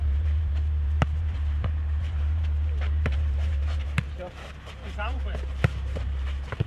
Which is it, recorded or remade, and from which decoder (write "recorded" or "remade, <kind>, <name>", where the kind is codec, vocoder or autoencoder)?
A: remade, vocoder, BigVGAN v2